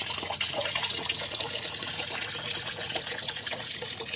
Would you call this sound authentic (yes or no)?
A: no